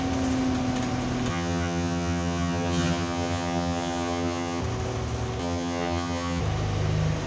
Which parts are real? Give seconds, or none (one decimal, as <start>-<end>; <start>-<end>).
0.0-1.3; 4.6-5.4; 6.4-7.3